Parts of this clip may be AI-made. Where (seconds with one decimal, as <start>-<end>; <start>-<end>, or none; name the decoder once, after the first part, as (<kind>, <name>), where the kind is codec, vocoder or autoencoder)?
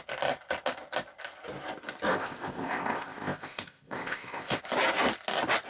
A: 2.1-4.6 (codec, ZipCodec)